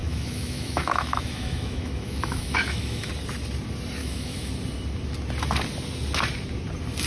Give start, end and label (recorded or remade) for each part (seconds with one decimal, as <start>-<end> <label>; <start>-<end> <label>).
0.0-3.1 remade; 3.1-4.0 recorded; 4.0-4.5 remade; 4.5-7.1 recorded